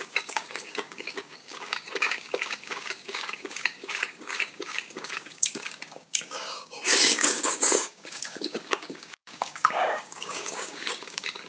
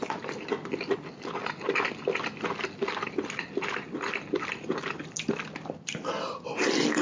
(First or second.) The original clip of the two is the second